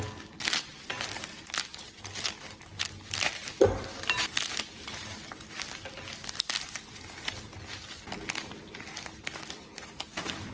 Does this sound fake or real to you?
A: real